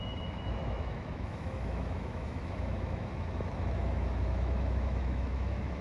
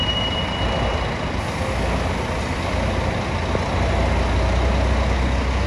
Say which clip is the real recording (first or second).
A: second